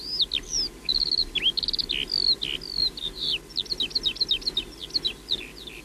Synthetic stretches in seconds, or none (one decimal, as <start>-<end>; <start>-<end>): none